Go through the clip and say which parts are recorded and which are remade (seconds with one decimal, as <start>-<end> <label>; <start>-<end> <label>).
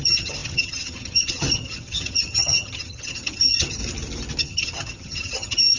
0.0-3.8 remade; 3.8-4.4 recorded; 4.4-5.8 remade